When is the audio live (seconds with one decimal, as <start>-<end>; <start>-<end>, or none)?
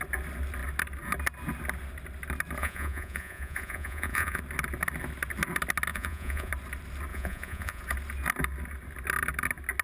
0.0-2.6; 4.4-5.9; 6.5-7.1; 7.8-9.8